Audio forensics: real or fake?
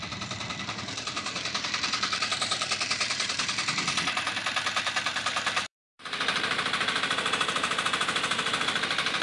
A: fake